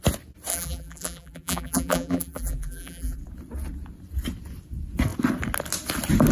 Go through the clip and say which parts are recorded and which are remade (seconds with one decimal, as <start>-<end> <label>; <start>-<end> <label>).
0.0-0.5 recorded; 0.5-3.2 remade; 3.2-6.3 recorded